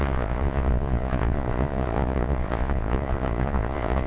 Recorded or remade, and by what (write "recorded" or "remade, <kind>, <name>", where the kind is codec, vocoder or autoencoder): remade, vocoder, Vocos